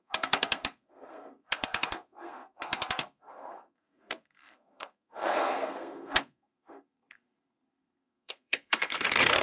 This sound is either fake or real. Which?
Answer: fake